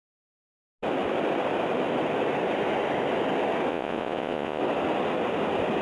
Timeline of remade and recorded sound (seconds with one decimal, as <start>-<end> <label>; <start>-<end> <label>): 0.0-3.7 recorded; 3.7-4.6 remade; 4.6-5.8 recorded